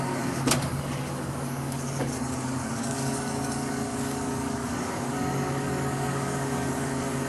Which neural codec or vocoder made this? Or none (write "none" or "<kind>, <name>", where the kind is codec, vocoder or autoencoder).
codec, DAC